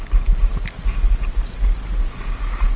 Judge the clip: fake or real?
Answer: real